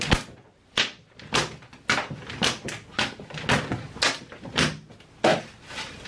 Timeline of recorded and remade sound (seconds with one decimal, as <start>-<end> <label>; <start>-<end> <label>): 0.0-5.3 recorded; 5.3-6.1 remade